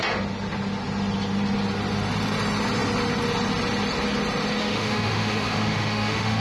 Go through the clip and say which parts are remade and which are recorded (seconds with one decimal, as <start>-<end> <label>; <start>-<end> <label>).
0.0-4.6 recorded; 4.6-6.4 remade